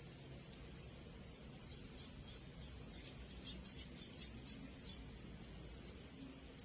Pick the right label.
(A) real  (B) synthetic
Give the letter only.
A